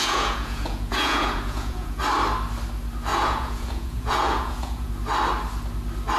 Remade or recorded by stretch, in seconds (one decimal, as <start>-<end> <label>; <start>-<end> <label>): 0.0-2.0 remade; 2.0-3.1 recorded; 3.1-4.9 remade; 4.9-6.2 recorded